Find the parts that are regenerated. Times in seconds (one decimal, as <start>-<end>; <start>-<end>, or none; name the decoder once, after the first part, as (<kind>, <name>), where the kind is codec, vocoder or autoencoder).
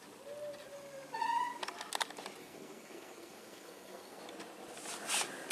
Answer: 2.4-4.2 (codec, SNAC)